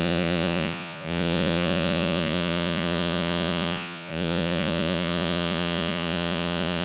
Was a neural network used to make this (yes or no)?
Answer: yes